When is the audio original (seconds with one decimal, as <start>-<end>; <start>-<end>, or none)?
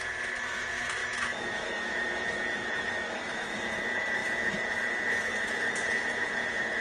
none